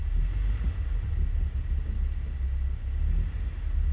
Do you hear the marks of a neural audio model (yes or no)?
no